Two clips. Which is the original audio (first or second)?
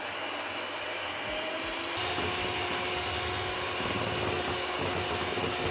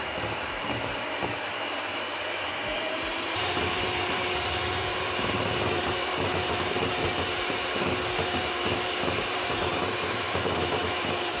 first